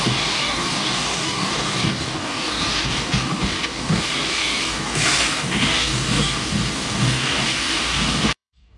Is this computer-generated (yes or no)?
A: yes